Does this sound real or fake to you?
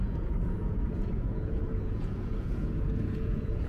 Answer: fake